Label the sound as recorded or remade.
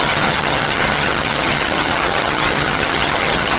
remade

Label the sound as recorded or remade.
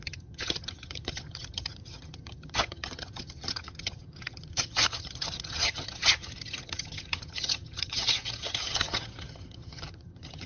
remade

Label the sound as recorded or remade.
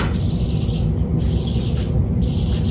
recorded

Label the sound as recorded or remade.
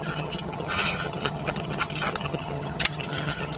remade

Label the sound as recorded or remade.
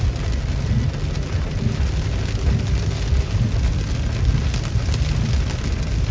recorded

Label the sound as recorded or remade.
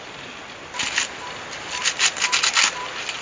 recorded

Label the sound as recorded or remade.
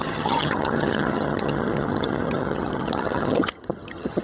remade